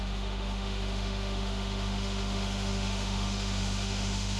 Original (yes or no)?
no